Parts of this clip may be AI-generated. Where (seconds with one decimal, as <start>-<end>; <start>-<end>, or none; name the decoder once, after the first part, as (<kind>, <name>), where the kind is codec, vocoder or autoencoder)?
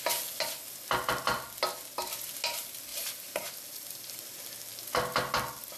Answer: 2.9-3.5 (vocoder, BigVGAN v2)